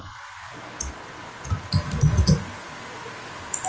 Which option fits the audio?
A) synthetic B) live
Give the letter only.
B